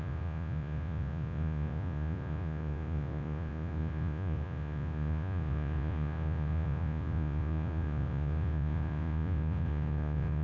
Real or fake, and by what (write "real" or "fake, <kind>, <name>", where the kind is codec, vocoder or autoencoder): fake, vocoder, Vocos